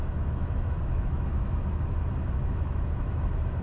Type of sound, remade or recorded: remade